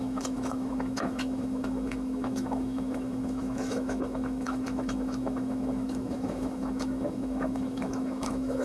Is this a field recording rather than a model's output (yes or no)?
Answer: no